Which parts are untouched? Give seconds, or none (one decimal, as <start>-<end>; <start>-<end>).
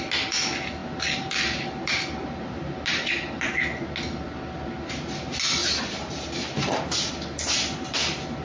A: 0.0-0.8; 2.6-5.6; 7.1-8.4